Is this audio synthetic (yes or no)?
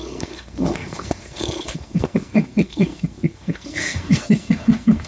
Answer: yes